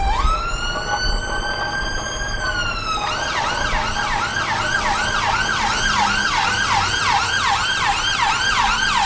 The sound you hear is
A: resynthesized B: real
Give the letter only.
B